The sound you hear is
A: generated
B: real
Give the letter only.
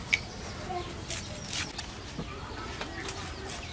B